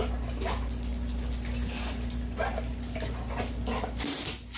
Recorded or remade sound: recorded